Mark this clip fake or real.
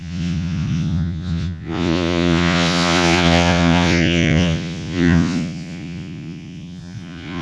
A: fake